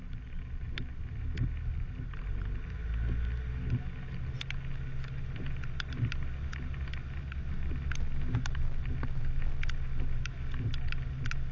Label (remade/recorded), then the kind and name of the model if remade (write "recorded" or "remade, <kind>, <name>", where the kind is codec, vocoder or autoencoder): recorded